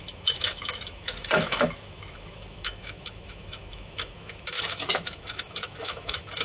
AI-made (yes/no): yes